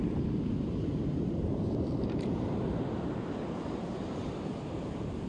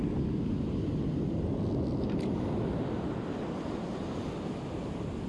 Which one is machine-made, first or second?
first